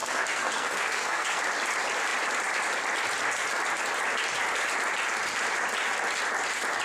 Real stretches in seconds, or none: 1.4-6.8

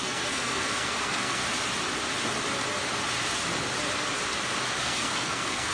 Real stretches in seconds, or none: 1.4-4.8